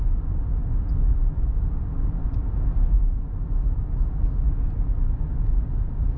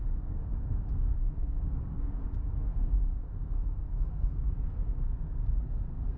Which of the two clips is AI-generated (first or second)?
second